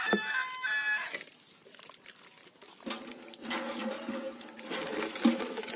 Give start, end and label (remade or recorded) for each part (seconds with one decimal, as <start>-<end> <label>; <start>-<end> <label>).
0.0-3.8 recorded; 3.8-4.8 remade; 4.8-5.8 recorded

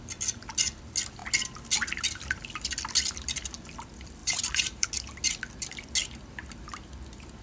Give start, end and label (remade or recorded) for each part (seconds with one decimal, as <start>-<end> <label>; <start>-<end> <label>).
0.0-4.2 recorded; 4.2-4.9 remade; 4.9-7.4 recorded

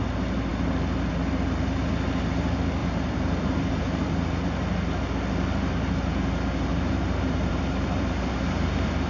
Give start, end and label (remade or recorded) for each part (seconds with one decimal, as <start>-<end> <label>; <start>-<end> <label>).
0.0-2.8 recorded; 2.8-4.1 remade; 4.1-6.7 recorded; 6.7-9.1 remade

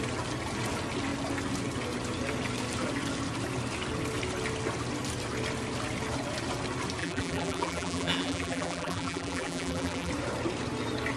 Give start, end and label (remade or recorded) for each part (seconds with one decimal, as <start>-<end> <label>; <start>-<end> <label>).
0.0-7.0 recorded; 7.0-10.1 remade; 10.1-11.2 recorded

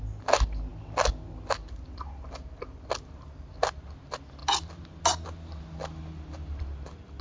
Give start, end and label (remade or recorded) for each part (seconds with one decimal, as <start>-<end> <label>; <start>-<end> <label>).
0.0-7.2 recorded